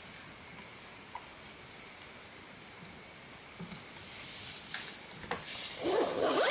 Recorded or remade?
recorded